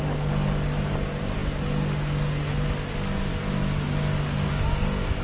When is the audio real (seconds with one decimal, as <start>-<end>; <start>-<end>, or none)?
0.0-5.2